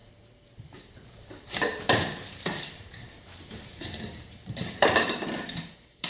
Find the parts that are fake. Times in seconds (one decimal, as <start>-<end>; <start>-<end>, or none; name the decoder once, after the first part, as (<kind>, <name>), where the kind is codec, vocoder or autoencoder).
0.0-6.1 (vocoder, BigVGAN v2)